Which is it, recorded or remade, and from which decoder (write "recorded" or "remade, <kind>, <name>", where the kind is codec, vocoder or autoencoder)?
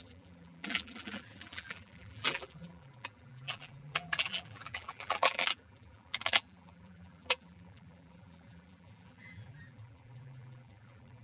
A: remade, vocoder, BigVGAN v2